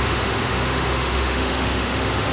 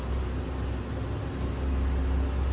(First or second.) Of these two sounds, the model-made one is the first